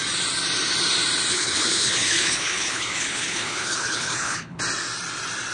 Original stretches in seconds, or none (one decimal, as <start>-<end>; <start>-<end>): 0.0-1.3; 4.6-5.5

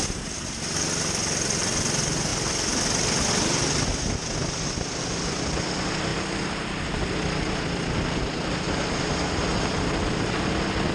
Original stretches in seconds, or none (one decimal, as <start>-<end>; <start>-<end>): 0.0-10.9